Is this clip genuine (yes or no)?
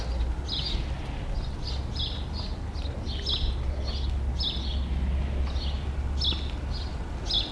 yes